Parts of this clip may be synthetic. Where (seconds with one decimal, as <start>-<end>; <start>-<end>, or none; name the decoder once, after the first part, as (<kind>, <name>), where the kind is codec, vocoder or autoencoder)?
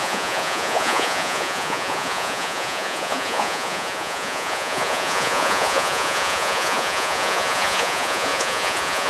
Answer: 0.0-9.1 (vocoder, Vocos)